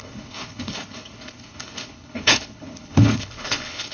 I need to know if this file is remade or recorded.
remade